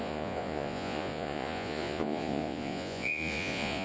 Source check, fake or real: fake